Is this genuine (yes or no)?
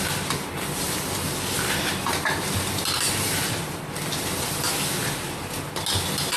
yes